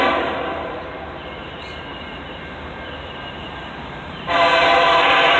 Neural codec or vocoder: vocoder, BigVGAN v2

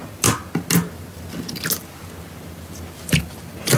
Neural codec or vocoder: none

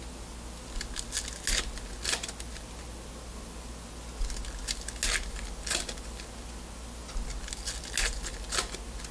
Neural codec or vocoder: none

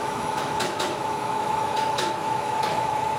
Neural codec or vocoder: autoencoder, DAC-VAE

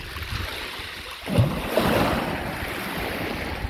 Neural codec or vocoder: none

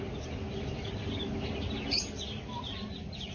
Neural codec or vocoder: none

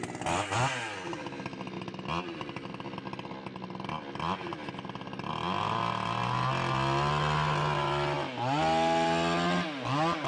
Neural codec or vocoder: none